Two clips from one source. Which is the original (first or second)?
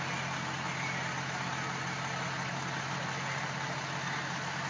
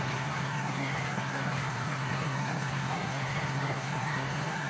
first